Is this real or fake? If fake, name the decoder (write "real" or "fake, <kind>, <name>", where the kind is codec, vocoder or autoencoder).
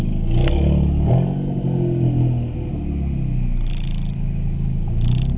real